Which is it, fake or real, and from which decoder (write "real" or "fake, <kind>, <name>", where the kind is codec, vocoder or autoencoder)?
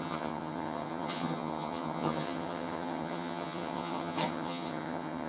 fake, vocoder, HiFi-GAN